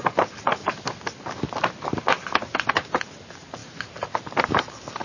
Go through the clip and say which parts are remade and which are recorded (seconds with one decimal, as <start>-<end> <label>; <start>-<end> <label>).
0.0-0.7 remade; 0.7-2.7 recorded; 2.7-5.0 remade